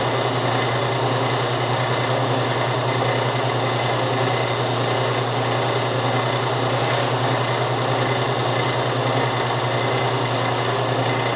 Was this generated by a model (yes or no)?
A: no